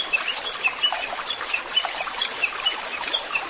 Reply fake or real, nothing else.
fake